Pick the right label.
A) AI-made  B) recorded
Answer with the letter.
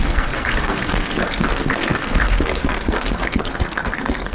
A